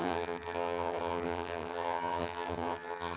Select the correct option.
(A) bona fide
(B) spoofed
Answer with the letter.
B